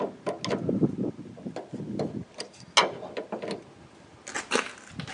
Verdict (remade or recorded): recorded